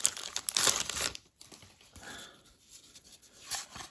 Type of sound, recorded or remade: recorded